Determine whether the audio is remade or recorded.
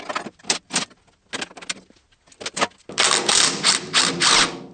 recorded